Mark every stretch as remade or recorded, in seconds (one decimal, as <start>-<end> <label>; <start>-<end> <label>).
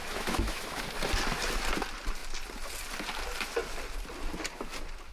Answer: 0.0-0.8 remade; 0.8-5.1 recorded